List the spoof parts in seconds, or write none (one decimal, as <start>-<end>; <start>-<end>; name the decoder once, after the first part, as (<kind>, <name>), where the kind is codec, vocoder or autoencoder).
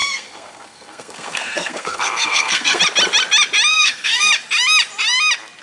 0.0-2.8 (codec, SNAC); 3.7-4.3